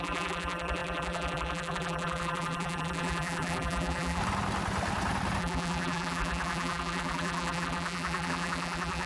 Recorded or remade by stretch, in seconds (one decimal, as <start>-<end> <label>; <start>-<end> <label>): 0.0-4.2 remade; 4.2-5.4 recorded; 5.4-9.1 remade